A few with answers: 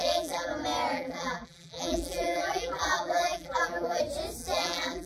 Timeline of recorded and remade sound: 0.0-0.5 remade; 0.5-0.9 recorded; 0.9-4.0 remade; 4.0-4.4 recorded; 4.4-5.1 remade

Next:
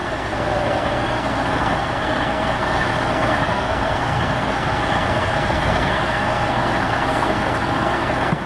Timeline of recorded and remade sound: 0.0-8.5 remade

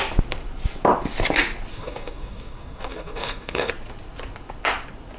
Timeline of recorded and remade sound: 0.0-1.7 recorded; 1.7-3.7 remade; 3.7-5.2 recorded

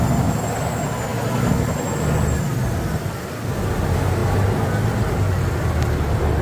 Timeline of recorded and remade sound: 0.0-6.4 recorded